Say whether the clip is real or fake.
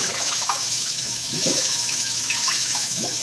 fake